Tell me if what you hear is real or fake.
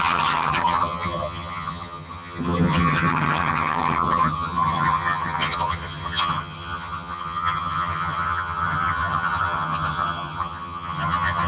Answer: fake